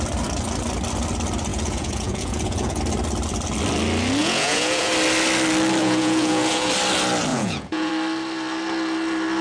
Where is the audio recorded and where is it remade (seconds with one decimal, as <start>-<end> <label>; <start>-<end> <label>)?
0.0-1.5 recorded; 1.5-2.8 remade; 2.8-4.2 recorded; 4.2-4.9 remade; 4.9-5.8 recorded; 5.8-6.7 remade; 6.7-7.3 recorded; 7.3-7.9 remade; 7.9-9.4 recorded